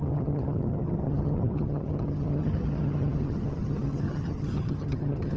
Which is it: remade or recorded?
remade